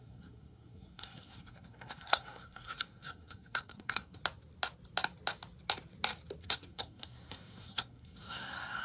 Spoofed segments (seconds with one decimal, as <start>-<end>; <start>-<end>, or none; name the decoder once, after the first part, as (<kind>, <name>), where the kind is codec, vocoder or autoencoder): 0.0-4.2 (codec, SNAC); 6.4-8.8